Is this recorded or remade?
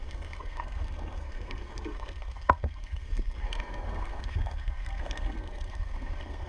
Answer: remade